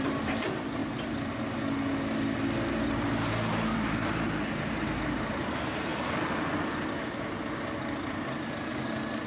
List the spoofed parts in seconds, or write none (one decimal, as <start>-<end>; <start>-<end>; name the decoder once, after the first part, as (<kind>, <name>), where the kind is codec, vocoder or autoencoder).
0.0-0.8 (vocoder, BigVGAN v2); 2.7-5.9